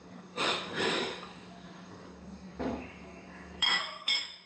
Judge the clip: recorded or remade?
remade